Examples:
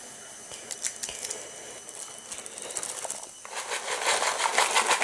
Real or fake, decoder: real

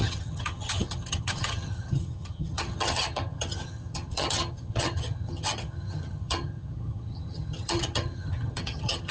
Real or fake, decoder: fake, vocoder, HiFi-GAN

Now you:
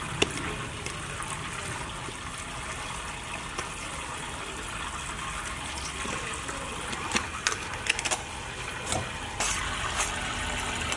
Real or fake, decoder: real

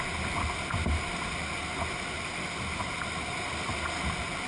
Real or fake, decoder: real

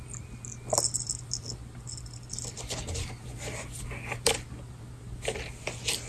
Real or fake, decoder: real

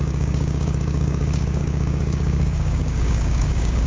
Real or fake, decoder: fake, codec, DAC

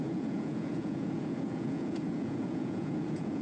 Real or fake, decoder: fake, vocoder, Vocos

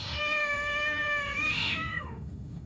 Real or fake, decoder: fake, autoencoder, DAC-VAE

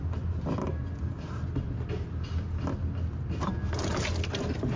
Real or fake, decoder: real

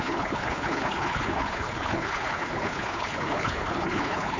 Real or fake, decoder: fake, codec, HILCodec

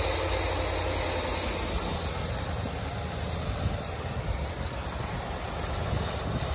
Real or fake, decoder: real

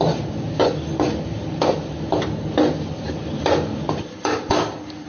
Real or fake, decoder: real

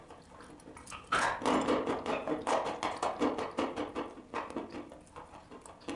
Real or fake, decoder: real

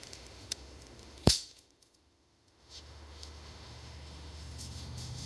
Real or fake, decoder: fake, autoencoder, DAC-VAE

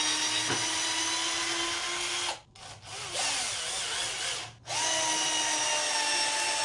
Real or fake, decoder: real